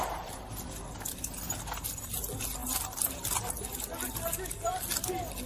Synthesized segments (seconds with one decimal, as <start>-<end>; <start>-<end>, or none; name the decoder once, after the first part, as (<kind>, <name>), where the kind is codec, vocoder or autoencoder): none